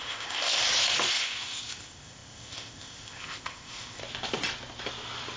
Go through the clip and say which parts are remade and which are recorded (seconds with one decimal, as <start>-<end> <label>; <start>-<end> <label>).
0.0-0.6 remade; 0.6-1.1 recorded; 1.1-4.0 remade; 4.0-5.4 recorded